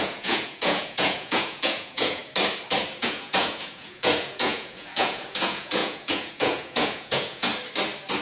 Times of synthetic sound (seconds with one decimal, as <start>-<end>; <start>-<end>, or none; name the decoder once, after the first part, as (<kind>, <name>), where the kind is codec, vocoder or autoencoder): 0.0-2.2 (vocoder, Vocos); 3.0-7.5